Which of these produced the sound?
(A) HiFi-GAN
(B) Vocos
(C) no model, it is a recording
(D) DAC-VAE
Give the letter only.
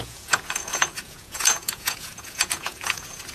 B